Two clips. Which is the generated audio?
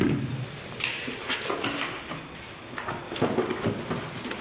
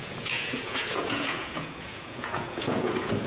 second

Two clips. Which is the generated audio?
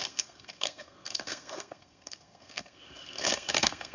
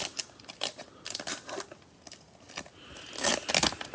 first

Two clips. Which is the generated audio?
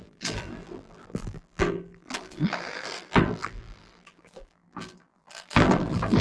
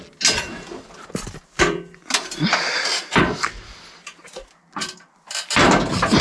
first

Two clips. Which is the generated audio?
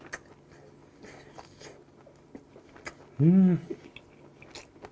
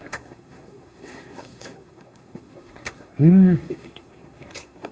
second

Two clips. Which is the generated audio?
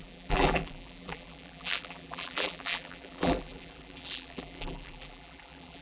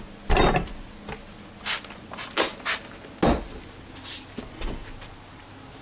first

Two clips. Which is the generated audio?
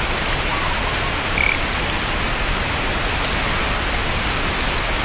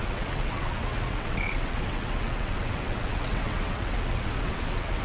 second